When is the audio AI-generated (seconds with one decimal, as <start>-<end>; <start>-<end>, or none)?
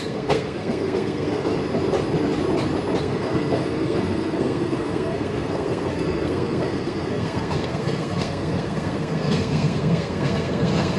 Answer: 0.0-1.5; 3.0-11.0